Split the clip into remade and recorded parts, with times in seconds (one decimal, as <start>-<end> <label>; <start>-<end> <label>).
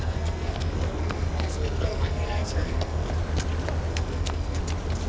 0.0-3.1 remade; 3.1-3.9 recorded; 3.9-4.6 remade; 4.6-5.1 recorded